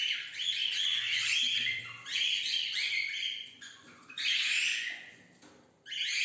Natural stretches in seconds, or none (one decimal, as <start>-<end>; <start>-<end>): 0.0-0.6; 4.3-4.7; 5.2-6.2